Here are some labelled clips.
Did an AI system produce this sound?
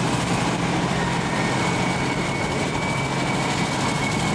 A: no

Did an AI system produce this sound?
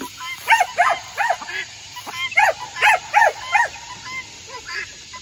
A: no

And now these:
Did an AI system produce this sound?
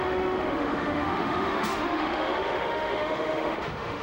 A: yes